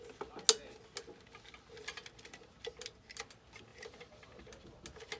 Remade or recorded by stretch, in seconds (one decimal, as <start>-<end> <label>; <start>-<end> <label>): 0.0-5.2 recorded